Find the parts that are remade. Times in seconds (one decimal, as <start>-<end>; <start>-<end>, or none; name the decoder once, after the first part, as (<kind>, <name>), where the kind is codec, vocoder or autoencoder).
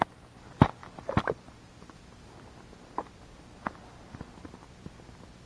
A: none